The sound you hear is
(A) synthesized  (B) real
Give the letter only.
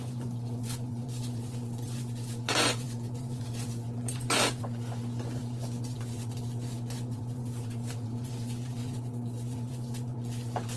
A